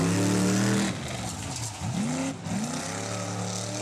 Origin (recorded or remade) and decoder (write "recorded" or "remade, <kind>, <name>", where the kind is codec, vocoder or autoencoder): recorded